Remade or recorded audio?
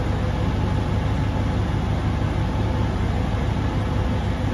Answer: recorded